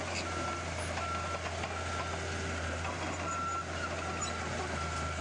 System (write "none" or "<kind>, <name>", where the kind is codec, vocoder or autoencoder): none